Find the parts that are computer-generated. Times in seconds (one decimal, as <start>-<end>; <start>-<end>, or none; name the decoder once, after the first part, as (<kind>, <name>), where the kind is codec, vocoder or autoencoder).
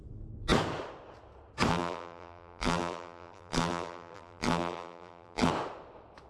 1.7-5.5 (vocoder, BigVGAN v2)